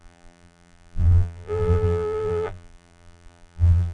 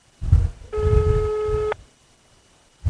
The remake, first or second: first